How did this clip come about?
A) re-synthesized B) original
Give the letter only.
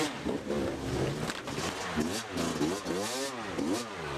B